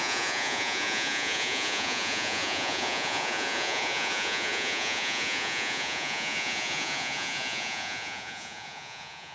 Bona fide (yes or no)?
no